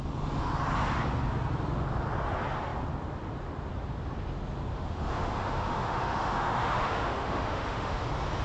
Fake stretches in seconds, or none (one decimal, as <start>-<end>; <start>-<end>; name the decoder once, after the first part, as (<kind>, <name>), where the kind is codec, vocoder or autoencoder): 4.7-8.0 (autoencoder, DAC-VAE)